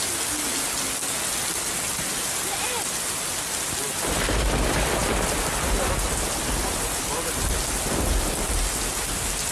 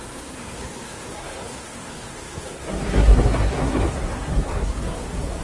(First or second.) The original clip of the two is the first